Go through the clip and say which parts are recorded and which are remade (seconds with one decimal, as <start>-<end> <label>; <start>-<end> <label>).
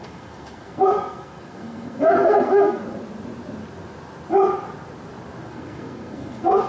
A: 0.0-2.9 remade; 2.9-5.5 recorded; 5.5-6.7 remade